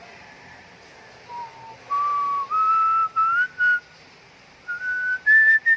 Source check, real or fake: real